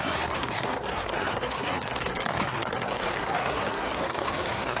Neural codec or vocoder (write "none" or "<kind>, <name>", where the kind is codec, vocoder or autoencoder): codec, SNAC